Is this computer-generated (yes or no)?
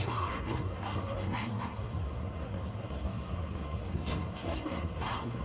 yes